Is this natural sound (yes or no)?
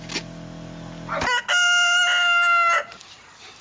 yes